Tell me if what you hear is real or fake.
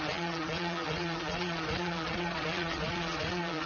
fake